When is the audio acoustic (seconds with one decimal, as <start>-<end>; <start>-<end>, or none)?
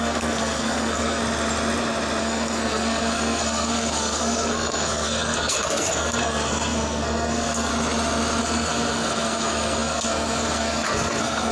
1.2-2.2; 7.7-8.4